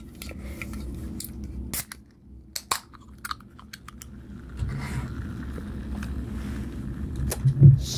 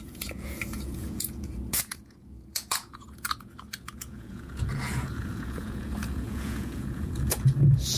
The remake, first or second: second